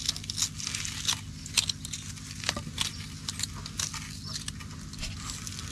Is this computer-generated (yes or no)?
no